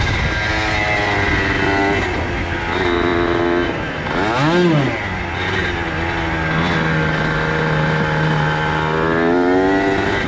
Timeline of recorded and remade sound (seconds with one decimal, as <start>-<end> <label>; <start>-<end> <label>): 0.0-10.3 recorded